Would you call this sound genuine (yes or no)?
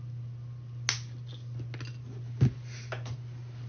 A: yes